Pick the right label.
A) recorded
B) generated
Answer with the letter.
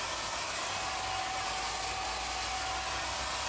A